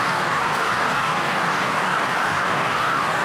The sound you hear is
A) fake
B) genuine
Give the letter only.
A